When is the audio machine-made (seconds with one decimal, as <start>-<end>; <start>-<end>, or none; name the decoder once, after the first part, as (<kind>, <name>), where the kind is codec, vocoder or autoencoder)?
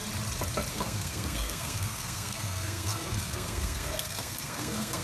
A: 0.7-5.0 (codec, SNAC)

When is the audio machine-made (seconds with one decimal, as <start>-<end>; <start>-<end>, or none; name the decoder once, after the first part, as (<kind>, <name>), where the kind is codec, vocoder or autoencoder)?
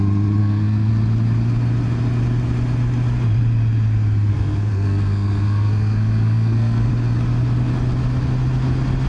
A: 0.4-0.9 (codec, SNAC); 4.3-6.9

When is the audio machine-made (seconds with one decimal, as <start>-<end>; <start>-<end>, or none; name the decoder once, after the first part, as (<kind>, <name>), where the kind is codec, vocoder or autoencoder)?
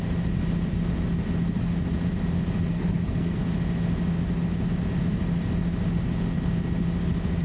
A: 2.7-3.4 (codec, SNAC)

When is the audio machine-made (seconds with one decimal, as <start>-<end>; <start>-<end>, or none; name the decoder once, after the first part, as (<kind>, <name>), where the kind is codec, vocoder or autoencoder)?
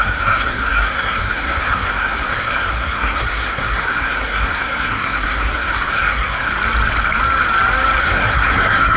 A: 0.0-6.5 (codec, SNAC); 8.0-9.0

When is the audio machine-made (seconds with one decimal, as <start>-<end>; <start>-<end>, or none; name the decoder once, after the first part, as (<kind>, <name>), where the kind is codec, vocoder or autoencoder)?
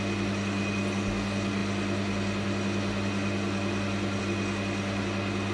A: none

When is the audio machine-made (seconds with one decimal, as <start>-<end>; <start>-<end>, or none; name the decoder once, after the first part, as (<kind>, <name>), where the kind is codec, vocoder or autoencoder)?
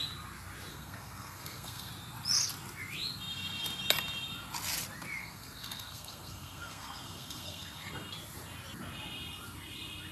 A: 0.7-1.9 (codec, SNAC); 5.2-7.9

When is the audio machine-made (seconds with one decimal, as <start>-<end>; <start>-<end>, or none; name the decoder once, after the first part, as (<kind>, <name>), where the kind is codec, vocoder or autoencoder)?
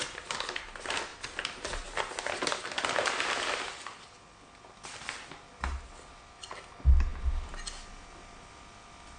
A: none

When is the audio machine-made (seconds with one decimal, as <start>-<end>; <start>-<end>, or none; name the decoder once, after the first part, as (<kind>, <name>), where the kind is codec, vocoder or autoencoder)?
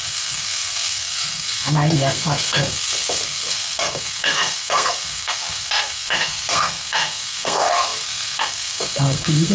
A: 0.0-9.5 (codec, SNAC)